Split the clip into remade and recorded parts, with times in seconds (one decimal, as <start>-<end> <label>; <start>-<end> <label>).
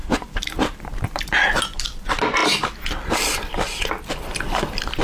0.0-1.2 remade; 1.2-5.0 recorded